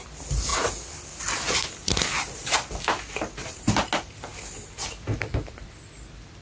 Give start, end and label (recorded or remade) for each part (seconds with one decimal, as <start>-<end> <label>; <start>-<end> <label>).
0.0-6.4 recorded